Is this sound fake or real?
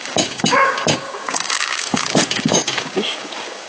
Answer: fake